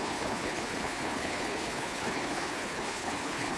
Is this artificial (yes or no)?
yes